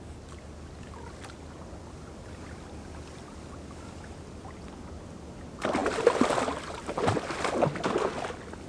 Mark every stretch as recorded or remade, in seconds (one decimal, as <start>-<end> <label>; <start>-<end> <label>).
0.0-8.7 recorded

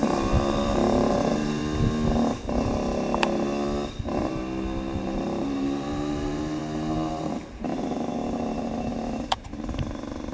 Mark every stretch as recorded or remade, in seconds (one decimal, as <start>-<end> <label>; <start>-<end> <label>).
0.0-1.6 remade; 1.6-5.0 recorded; 5.0-6.6 remade; 6.6-7.3 recorded; 7.3-10.3 remade

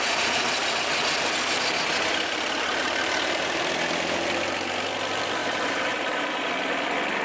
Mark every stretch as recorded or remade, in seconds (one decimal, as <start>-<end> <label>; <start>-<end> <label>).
0.0-5.4 recorded; 5.4-6.5 remade; 6.5-7.2 recorded

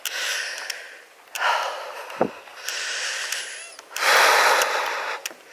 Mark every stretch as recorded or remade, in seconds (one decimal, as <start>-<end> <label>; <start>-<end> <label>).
0.0-2.5 recorded; 2.5-3.4 remade; 3.4-5.5 recorded

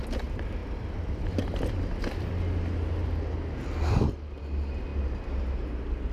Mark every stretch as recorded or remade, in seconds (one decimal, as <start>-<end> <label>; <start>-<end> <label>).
0.0-0.6 recorded; 0.6-2.3 remade; 2.3-6.1 recorded